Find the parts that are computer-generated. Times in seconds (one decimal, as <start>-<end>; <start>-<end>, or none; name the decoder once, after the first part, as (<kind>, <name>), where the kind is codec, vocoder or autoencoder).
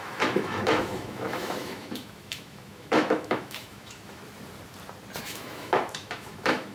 0.0-4.2 (autoencoder, DAC-VAE); 5.2-6.7